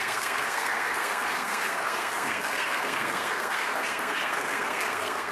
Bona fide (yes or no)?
no